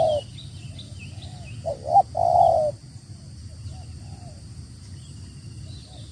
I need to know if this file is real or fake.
real